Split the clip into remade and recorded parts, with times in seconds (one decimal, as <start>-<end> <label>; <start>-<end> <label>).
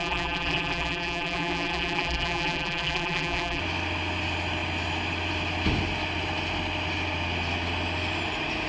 0.0-3.6 remade; 3.6-8.7 recorded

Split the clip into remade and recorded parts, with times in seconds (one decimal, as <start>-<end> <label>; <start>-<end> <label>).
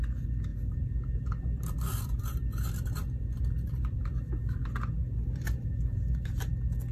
0.0-0.5 recorded; 0.5-4.6 remade; 4.6-5.0 recorded; 5.0-6.4 remade; 6.4-6.9 recorded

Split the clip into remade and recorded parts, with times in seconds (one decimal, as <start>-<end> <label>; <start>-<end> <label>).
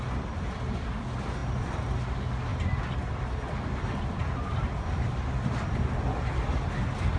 0.0-1.4 recorded; 1.4-2.0 remade; 2.0-2.5 recorded; 2.5-6.7 remade; 6.7-7.2 recorded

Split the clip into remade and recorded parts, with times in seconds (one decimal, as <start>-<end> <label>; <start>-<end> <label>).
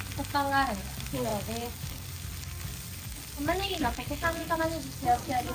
0.0-5.5 recorded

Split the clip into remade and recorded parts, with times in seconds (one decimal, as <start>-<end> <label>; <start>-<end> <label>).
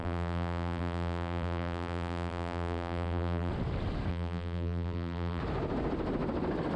0.0-3.5 remade; 3.5-4.1 recorded; 4.1-5.4 remade; 5.4-6.8 recorded